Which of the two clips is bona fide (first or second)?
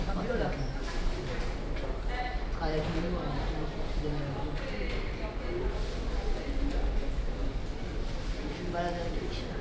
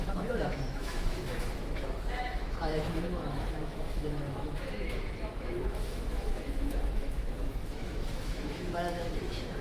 first